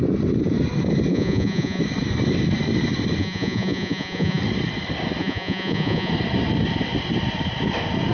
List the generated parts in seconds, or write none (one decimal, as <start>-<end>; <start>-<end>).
1.1-1.8; 3.2-4.4; 5.2-6.1